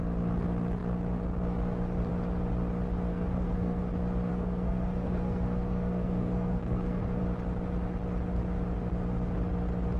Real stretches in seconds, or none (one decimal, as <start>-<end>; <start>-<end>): 0.0-3.1; 3.8-4.3; 7.2-10.0